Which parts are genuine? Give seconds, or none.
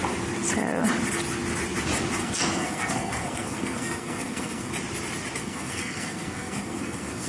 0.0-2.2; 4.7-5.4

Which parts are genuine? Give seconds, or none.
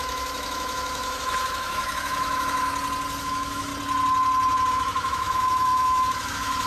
2.7-3.2; 3.7-4.7